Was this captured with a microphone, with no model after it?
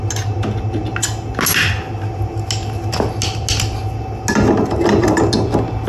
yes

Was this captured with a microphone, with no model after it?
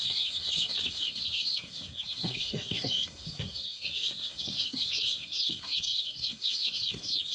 no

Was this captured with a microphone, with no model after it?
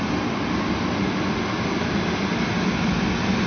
yes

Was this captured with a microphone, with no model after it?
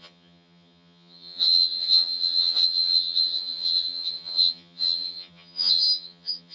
no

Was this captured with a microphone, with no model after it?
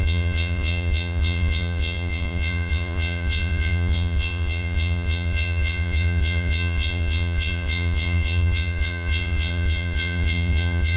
no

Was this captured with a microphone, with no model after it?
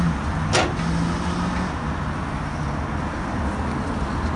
yes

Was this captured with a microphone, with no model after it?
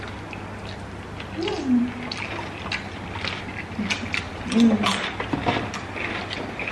yes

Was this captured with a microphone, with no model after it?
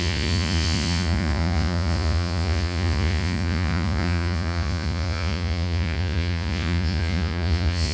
no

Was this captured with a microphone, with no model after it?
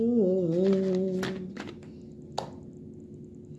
yes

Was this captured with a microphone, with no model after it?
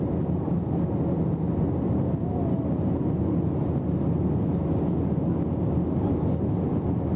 yes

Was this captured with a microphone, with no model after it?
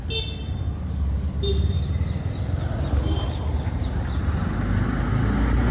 yes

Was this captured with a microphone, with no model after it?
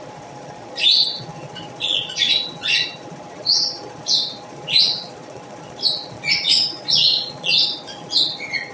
no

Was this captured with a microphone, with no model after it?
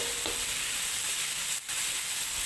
yes